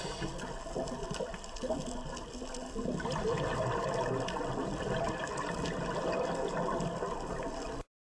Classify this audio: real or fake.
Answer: real